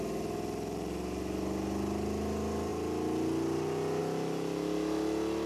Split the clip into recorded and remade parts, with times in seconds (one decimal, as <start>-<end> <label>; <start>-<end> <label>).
0.0-5.5 recorded